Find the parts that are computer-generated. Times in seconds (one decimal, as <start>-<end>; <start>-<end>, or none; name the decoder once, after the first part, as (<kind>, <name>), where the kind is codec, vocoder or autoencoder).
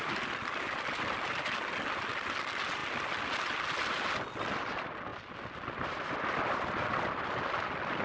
5.1-7.2 (vocoder, BigVGAN v2)